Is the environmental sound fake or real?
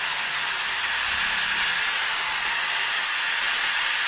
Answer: real